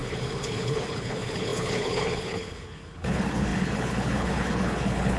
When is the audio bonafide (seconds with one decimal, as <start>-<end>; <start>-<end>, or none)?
none